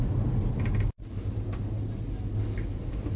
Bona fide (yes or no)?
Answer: yes